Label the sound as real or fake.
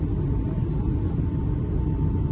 real